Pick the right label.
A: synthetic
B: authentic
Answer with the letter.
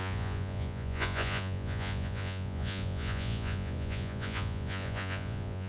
A